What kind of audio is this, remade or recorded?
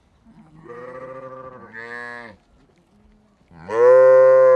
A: recorded